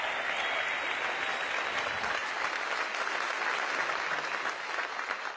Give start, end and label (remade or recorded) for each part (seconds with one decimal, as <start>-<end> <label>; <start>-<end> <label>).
0.0-5.4 recorded